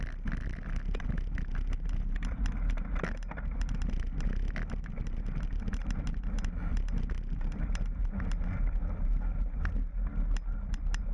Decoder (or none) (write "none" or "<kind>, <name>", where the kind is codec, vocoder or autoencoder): none